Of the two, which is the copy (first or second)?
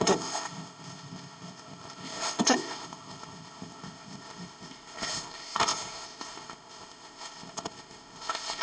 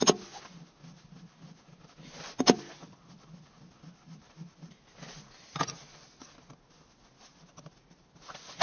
first